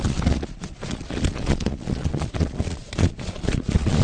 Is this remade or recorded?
remade